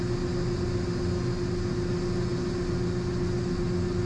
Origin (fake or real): real